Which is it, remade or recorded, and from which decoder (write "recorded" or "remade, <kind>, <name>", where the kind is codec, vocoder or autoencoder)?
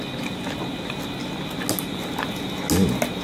recorded